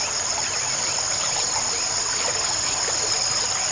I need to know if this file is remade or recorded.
recorded